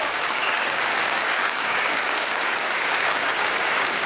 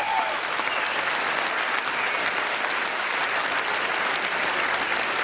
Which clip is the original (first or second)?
second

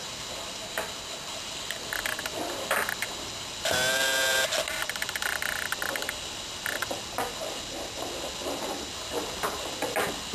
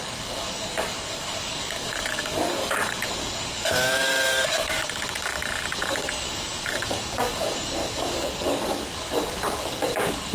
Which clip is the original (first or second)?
first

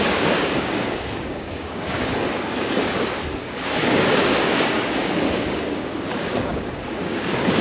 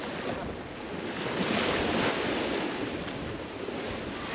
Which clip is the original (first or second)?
second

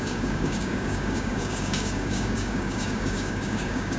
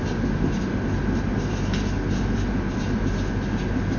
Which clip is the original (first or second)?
second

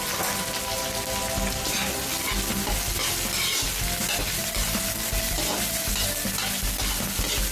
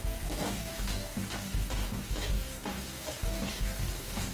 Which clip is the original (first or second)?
first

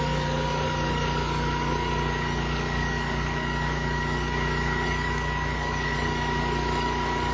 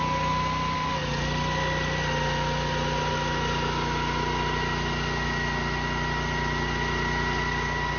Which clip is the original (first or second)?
second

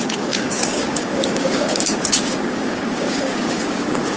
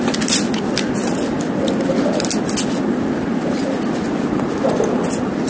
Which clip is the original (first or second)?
second